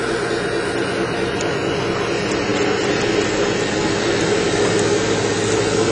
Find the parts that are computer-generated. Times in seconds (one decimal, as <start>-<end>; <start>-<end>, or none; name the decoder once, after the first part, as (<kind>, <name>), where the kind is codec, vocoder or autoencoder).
none